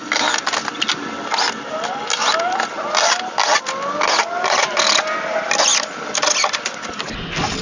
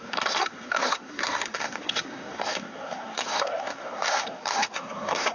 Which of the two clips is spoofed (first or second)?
second